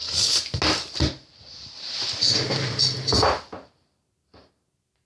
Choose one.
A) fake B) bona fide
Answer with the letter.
B